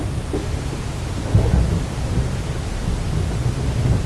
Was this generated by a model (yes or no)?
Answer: no